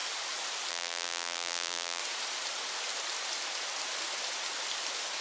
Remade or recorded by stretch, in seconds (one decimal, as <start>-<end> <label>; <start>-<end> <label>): 0.0-0.7 recorded; 0.7-2.0 remade; 2.0-5.2 recorded